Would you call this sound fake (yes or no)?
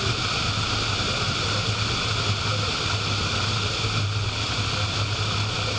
no